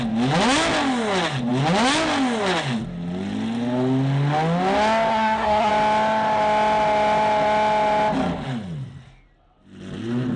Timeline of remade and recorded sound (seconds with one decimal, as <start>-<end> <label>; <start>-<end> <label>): 0.0-5.1 recorded; 5.1-5.7 remade; 5.7-10.4 recorded